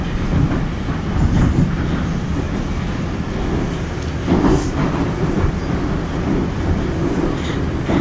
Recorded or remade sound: recorded